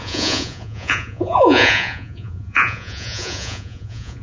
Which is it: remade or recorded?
remade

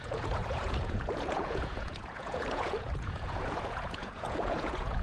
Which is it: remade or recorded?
remade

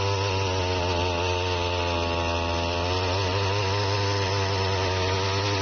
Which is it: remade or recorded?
recorded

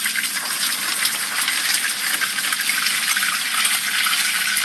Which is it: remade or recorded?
recorded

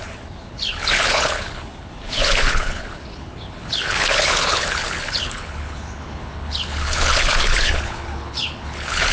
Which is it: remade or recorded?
remade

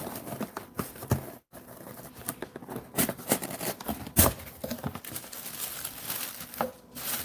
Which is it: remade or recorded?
remade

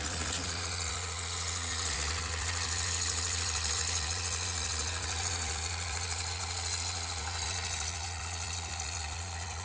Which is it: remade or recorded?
remade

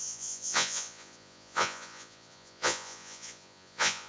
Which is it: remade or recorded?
remade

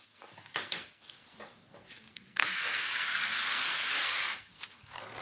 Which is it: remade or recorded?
remade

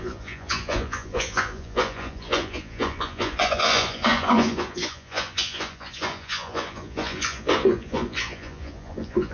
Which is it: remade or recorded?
remade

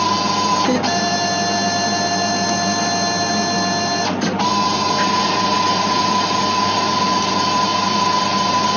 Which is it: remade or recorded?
recorded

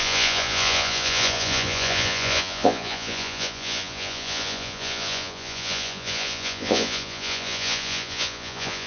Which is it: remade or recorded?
remade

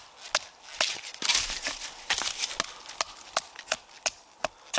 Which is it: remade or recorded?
recorded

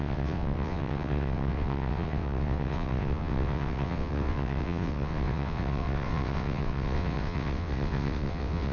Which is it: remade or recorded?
remade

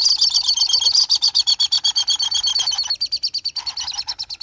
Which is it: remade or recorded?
recorded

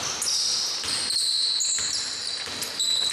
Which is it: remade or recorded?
recorded